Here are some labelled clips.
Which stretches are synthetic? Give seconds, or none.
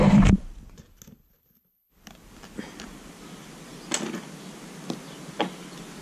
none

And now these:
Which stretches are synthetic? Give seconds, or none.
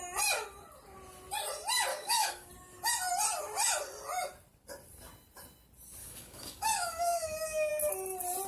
1.9-2.5 (codec, DAC); 6.0-7.7